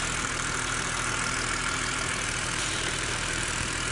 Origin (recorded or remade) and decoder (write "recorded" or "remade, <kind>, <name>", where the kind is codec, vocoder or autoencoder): remade, vocoder, BigVGAN v2